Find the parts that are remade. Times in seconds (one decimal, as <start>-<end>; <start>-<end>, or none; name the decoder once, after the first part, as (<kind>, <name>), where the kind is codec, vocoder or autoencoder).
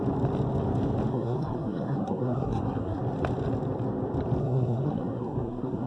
1.1-3.0 (codec, SNAC); 4.4-5.9